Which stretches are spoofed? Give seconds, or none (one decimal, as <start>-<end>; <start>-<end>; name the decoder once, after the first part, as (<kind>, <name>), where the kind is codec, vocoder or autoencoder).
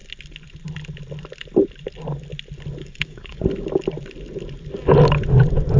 2.8-3.4 (codec, DAC)